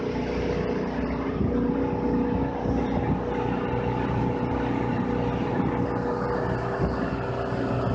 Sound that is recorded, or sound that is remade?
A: recorded